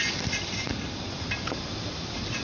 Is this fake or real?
real